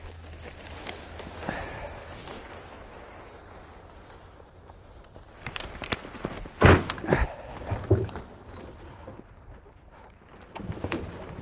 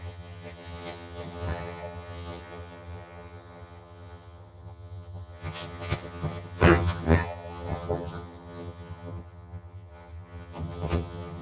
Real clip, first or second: first